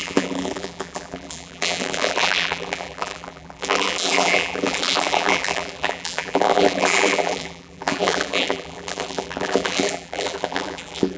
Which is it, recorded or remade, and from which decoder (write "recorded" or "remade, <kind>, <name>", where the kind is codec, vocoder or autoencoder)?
remade, vocoder, BigVGAN v2